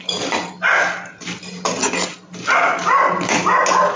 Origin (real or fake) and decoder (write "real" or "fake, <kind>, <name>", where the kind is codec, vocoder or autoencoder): real